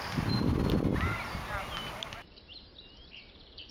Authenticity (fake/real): fake